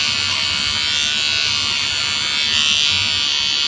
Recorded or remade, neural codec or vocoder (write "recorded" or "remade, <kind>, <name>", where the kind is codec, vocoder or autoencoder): recorded